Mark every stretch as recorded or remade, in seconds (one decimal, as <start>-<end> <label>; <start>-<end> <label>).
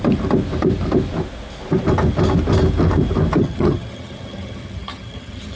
0.0-3.4 recorded; 3.4-5.6 remade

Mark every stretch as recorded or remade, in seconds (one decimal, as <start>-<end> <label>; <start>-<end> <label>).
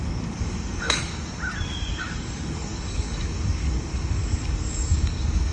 0.0-1.1 remade; 1.1-2.0 recorded; 2.0-5.5 remade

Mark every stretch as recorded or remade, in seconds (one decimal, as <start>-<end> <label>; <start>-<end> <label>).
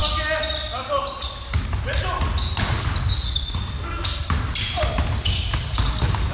0.0-4.5 recorded; 4.5-5.5 remade; 5.5-6.3 recorded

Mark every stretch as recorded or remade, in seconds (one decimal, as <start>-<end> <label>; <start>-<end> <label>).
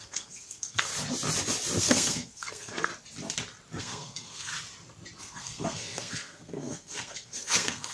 0.0-0.9 remade; 0.9-1.8 recorded; 1.8-2.9 remade; 2.9-3.8 recorded; 3.8-4.5 remade; 4.5-5.2 recorded; 5.2-7.9 remade